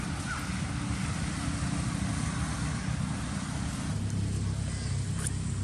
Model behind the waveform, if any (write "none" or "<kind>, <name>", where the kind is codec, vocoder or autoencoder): none